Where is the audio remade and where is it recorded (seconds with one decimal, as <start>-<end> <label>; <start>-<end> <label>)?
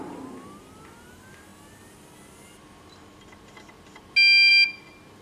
0.0-5.2 recorded